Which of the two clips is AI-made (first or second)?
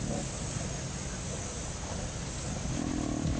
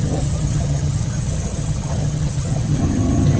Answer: second